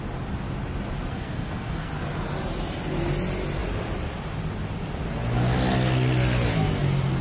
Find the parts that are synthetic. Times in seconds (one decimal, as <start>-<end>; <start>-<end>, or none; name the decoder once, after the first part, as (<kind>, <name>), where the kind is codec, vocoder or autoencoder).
1.1-1.9 (codec, SNAC)

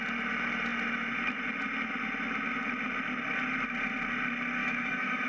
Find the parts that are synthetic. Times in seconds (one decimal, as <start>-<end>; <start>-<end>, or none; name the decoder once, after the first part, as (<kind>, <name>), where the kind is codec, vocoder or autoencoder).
4.6-5.3 (autoencoder, DAC-VAE)

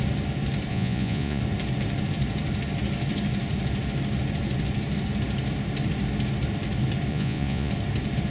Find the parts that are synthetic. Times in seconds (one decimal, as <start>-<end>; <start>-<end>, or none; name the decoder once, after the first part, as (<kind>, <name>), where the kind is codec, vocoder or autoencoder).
0.7-1.4 (vocoder, Vocos); 7.1-7.7

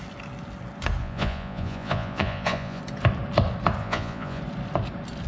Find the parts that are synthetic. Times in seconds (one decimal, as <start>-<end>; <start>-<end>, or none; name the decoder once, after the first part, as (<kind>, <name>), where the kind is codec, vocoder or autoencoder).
1.0-2.8 (vocoder, Vocos); 3.8-4.4

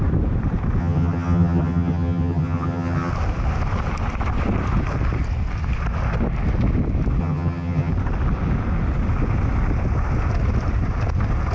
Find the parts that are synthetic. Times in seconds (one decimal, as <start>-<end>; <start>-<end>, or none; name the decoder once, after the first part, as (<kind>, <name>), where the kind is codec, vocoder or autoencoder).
0.8-3.1 (vocoder, HiFi-GAN); 7.2-7.9

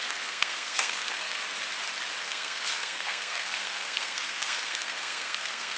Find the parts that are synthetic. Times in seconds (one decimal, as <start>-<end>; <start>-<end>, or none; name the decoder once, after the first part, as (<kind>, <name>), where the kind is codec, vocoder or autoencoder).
0.0-1.4 (codec, SNAC); 2.2-5.8